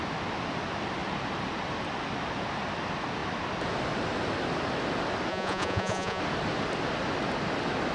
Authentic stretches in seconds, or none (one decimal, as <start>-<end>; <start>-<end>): 0.0-5.3; 6.2-7.9